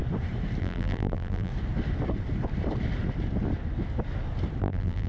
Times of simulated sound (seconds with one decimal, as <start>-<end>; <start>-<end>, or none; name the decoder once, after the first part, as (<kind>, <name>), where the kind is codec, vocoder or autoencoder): 0.6-1.5 (vocoder, BigVGAN v2); 4.6-5.1